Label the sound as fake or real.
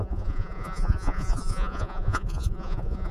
fake